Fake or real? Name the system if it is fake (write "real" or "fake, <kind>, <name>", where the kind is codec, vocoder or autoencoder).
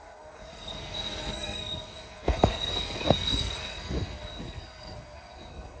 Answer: fake, codec, SNAC